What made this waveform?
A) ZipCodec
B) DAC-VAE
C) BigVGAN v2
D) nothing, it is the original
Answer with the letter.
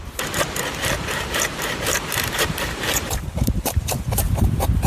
C